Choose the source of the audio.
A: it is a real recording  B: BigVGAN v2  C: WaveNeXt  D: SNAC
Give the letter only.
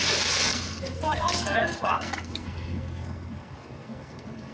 D